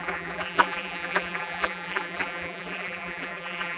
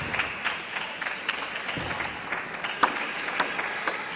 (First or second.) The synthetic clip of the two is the first